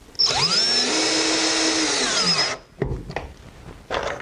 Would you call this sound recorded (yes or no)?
yes